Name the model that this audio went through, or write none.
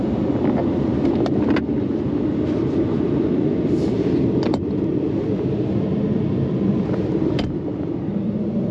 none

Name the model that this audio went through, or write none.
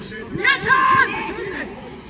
vocoder, Vocos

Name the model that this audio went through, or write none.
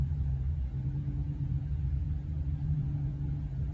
vocoder, Vocos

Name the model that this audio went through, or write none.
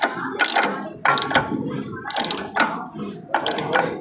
none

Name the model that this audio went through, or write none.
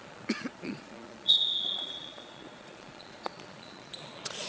vocoder, Vocos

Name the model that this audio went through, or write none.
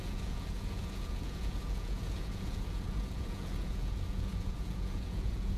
vocoder, Vocos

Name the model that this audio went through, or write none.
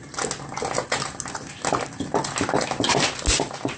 none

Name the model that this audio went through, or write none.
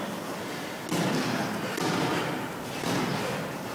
none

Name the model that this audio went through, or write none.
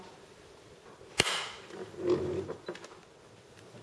none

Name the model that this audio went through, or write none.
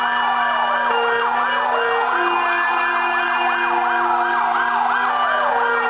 none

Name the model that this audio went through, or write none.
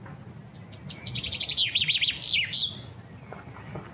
none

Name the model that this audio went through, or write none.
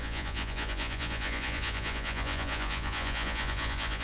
vocoder, Vocos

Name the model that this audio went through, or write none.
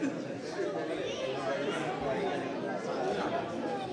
none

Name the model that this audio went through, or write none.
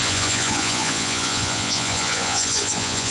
vocoder, Vocos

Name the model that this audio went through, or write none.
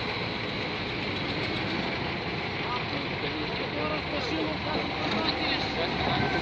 none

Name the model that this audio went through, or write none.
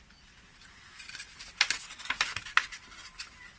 none